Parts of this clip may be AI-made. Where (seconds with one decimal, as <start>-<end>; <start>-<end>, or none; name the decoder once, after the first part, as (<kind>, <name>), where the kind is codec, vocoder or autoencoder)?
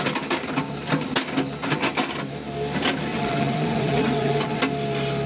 3.1-4.6 (vocoder, WaveNeXt)